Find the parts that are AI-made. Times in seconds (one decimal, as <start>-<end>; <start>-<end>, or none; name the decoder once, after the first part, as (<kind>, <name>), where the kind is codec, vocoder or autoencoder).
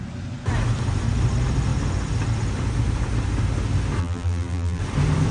4.0-4.8 (vocoder, BigVGAN v2)